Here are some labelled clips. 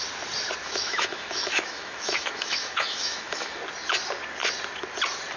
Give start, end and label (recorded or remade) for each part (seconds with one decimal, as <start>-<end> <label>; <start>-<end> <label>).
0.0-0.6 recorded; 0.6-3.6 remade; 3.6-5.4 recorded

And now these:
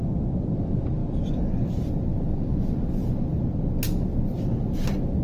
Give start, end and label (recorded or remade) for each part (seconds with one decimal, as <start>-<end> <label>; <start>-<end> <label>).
0.0-5.2 recorded

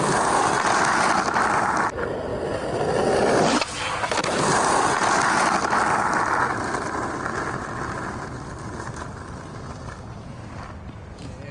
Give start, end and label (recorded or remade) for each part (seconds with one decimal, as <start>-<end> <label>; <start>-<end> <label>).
0.0-11.5 recorded